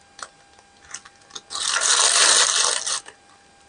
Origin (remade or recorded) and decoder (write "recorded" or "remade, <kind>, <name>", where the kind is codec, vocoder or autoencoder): recorded